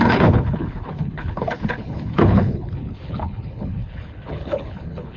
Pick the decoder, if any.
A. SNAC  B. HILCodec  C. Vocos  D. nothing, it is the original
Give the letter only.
B